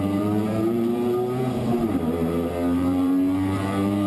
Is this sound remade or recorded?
remade